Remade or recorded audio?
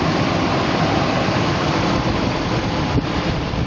remade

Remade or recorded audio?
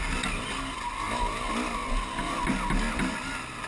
recorded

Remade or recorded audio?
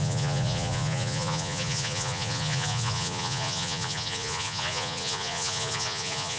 remade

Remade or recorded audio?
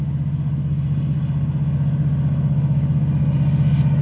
recorded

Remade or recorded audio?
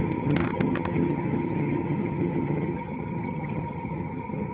remade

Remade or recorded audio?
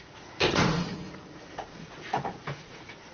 remade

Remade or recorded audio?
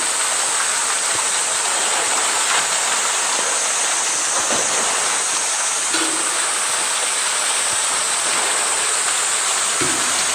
recorded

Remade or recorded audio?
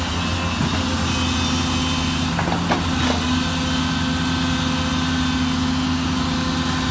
recorded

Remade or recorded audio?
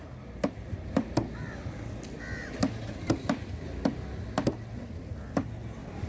recorded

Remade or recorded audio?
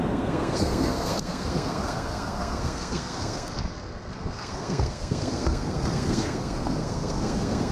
remade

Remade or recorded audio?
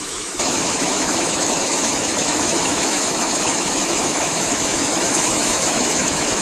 remade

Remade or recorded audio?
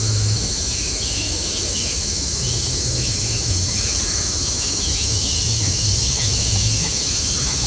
remade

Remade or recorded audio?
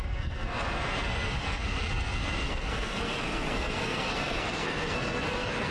remade